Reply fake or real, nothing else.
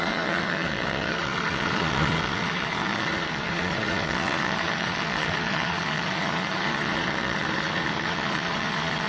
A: fake